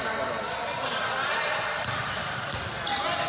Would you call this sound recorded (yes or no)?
yes